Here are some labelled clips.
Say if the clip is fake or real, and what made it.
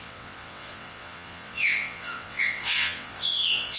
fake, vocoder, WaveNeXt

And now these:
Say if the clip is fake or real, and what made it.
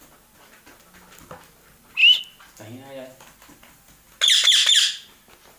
real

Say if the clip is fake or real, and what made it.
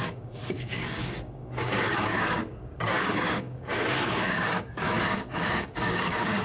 fake, codec, DAC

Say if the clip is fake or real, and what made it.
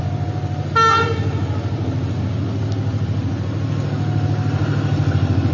real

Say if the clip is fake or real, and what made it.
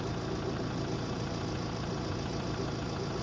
real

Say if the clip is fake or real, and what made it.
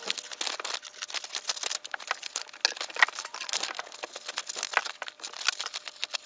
real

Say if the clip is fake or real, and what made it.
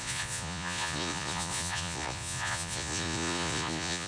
fake, vocoder, Vocos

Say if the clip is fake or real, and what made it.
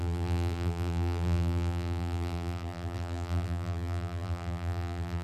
fake, vocoder, BigVGAN v2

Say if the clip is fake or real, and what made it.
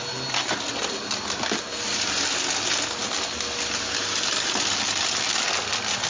real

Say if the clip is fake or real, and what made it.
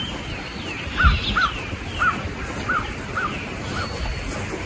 real